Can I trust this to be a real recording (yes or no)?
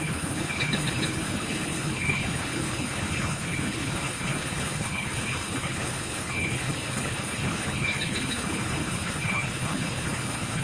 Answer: no